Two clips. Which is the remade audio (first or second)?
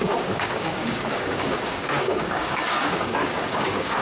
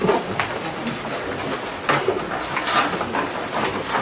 first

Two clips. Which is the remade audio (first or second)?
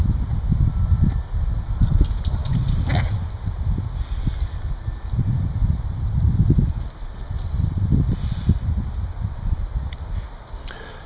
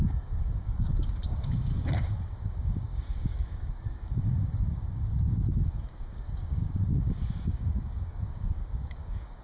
second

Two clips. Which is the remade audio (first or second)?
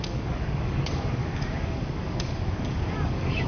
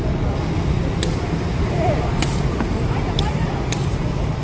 first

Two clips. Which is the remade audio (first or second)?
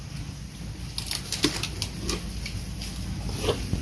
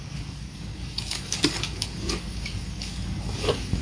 second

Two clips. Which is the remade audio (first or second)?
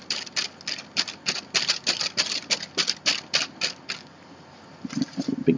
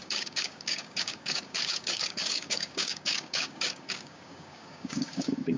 second